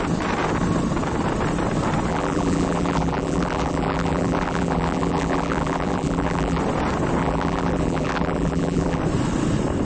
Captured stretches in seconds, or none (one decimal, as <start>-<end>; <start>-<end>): 0.0-2.1; 6.6-7.2; 9.0-9.8